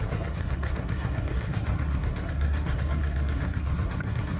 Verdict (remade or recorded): remade